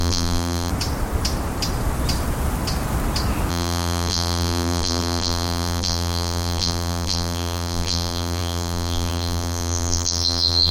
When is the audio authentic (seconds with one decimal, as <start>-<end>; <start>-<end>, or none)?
0.7-3.5